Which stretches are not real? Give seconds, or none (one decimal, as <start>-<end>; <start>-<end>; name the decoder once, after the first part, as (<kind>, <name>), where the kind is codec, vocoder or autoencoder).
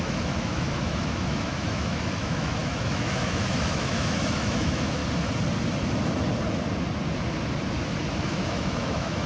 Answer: 0.0-5.0 (autoencoder, DAC-VAE); 8.2-9.3